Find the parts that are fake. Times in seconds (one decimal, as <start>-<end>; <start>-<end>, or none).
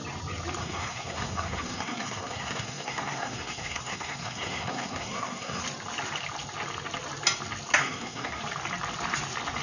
0.6-5.6; 7.8-8.4